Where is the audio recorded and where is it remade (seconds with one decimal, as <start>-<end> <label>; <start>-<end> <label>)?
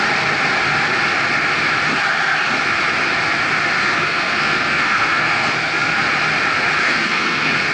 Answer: 0.0-3.8 recorded; 3.8-6.0 remade; 6.0-6.8 recorded; 6.8-7.7 remade